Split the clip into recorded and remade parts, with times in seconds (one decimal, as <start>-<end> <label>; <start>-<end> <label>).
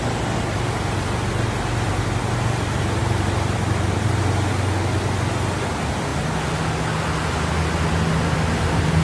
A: 0.0-3.0 recorded; 3.0-4.2 remade; 4.2-9.0 recorded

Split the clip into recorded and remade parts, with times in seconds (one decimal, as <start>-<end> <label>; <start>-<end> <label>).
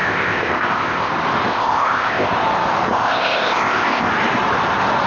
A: 0.0-1.1 remade; 1.1-1.5 recorded; 1.5-2.3 remade; 2.3-2.9 recorded; 2.9-4.1 remade; 4.1-5.1 recorded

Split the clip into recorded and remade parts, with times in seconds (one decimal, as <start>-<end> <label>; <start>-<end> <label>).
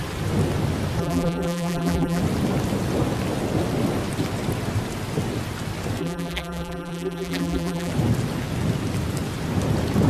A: 0.0-1.0 recorded; 1.0-2.2 remade; 2.2-6.0 recorded; 6.0-7.9 remade; 7.9-10.1 recorded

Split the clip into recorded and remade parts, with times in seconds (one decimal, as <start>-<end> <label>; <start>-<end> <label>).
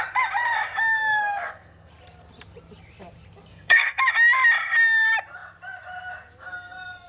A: 0.0-1.0 recorded; 1.0-1.9 remade; 1.9-3.5 recorded; 3.5-4.0 remade; 4.0-7.1 recorded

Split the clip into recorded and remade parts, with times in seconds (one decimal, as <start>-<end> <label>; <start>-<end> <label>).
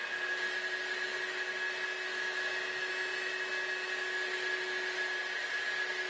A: 0.0-2.1 recorded; 2.1-2.9 remade; 2.9-6.1 recorded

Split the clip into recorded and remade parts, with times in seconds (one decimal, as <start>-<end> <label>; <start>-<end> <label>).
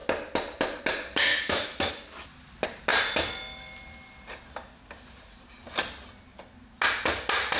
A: 0.0-1.3 recorded; 1.3-1.9 remade; 1.9-7.6 recorded